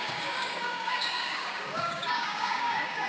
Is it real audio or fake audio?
fake